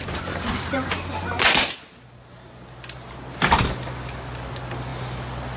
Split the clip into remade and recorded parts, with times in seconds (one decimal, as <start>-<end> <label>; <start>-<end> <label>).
0.0-5.6 recorded